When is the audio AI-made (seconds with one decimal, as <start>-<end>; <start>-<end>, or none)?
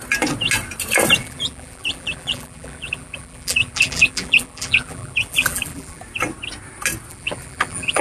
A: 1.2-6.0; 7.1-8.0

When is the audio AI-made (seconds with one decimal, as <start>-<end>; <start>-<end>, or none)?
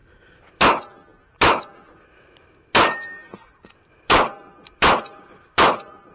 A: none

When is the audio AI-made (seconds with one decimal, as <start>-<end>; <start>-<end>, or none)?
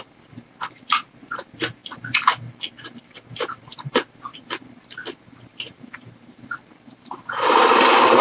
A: 0.0-1.8; 3.0-8.2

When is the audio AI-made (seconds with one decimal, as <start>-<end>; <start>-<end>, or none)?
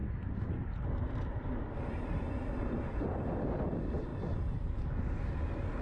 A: 0.0-2.9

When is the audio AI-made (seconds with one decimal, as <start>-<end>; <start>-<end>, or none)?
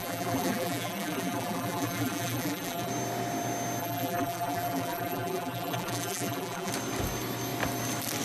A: 0.0-2.9; 3.8-6.7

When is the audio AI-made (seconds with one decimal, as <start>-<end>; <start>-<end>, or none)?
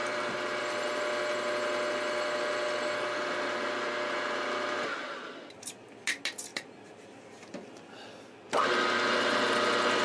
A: 0.0-0.6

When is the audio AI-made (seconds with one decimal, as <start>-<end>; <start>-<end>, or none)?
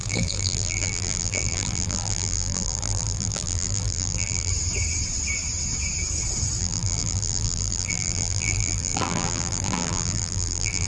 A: 0.0-4.5; 6.6-10.9